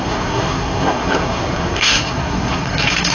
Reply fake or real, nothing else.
fake